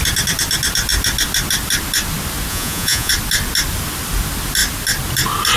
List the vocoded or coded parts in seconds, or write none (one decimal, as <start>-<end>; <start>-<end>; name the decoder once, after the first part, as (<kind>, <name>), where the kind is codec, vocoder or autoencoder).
2.5-3.1 (vocoder, Vocos)